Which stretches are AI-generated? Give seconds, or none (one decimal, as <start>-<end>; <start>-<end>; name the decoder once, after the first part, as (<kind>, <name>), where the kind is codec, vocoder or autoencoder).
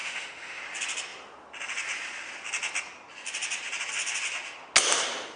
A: 0.0-0.6 (autoencoder, DAC-VAE)